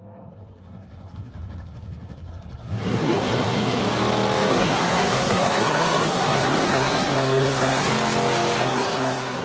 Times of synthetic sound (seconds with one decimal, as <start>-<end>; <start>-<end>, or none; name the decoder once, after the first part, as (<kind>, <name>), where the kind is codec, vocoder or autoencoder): 0.0-3.8 (codec, SNAC); 4.5-7.9; 8.6-9.4